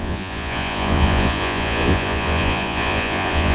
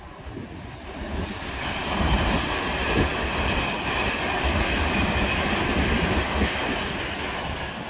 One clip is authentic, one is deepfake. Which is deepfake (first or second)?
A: first